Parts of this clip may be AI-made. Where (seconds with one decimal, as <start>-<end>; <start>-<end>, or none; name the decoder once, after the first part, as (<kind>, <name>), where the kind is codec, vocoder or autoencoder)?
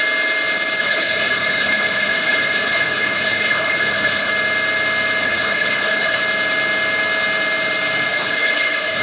0.8-4.3 (codec, HILCodec); 5.2-6.2; 8.1-9.0